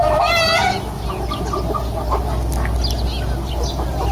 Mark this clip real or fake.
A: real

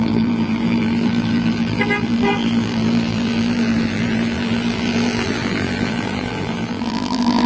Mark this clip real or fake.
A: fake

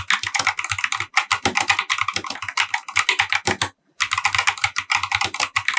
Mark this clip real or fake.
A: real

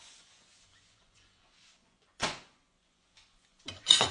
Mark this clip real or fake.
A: fake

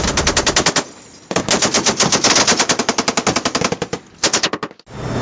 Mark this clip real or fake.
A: real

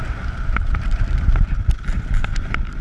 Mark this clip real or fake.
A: fake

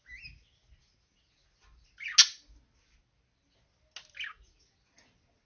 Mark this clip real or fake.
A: real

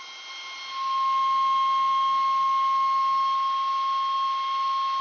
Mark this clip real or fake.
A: real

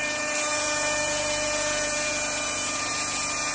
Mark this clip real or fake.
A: fake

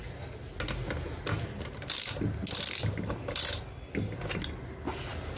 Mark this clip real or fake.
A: real